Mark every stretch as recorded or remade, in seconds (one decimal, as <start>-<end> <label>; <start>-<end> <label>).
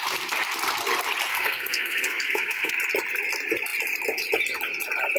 0.0-1.3 recorded; 1.3-2.7 remade; 2.7-5.2 recorded